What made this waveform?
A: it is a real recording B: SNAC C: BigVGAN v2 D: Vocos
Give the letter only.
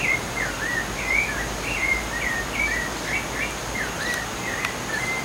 A